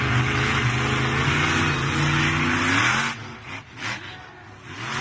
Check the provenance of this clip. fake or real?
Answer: real